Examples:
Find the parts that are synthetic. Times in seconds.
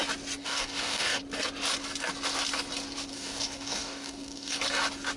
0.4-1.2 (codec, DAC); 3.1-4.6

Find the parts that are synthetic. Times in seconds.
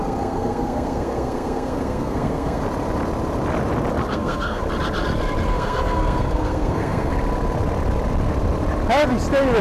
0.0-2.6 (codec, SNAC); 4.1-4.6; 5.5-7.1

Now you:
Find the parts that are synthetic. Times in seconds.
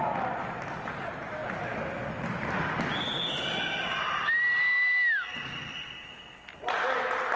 none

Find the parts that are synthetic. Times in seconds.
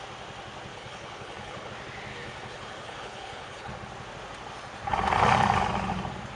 0.7-1.7 (codec, HILCodec); 2.1-3.7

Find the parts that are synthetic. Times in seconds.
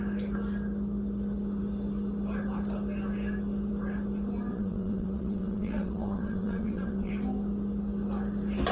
4.5-7.1 (vocoder, WaveNeXt)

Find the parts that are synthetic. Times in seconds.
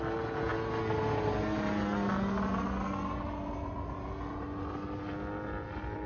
none